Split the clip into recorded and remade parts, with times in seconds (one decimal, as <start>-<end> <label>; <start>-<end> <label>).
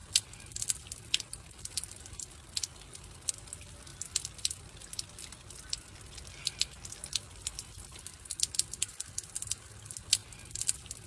0.0-11.1 recorded